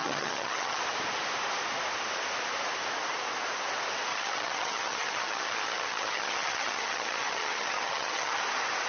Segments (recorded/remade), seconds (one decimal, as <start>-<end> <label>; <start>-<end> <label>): 0.0-0.8 remade; 0.8-4.1 recorded; 4.1-8.4 remade; 8.4-8.9 recorded